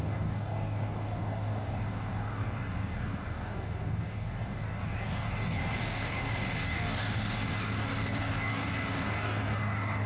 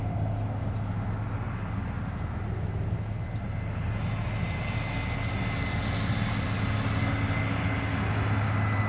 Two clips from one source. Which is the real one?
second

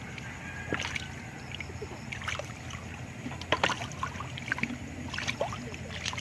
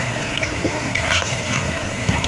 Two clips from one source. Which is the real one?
first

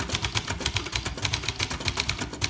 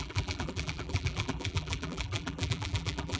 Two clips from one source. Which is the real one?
first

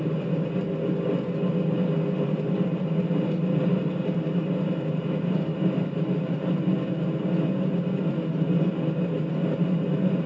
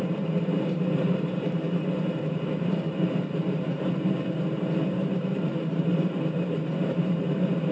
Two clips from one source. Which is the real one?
first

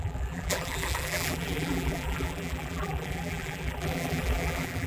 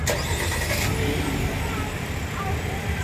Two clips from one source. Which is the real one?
second